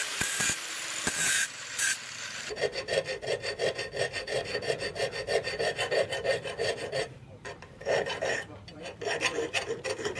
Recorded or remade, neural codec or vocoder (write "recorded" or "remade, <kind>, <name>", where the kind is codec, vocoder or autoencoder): remade, vocoder, BigVGAN v2